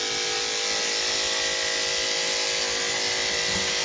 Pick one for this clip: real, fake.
real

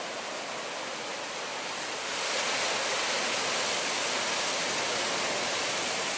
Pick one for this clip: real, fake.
real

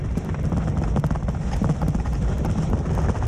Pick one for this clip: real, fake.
real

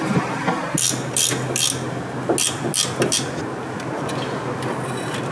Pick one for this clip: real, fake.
real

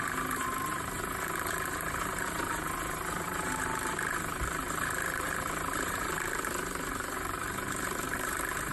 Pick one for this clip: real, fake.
fake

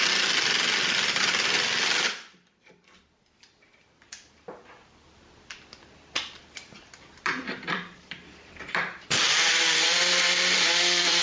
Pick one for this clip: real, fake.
fake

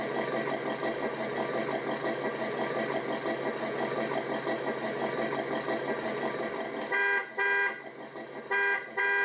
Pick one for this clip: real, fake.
real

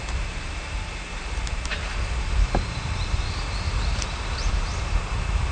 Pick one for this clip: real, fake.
fake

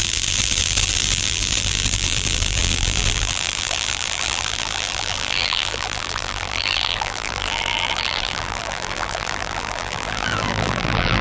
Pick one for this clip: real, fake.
fake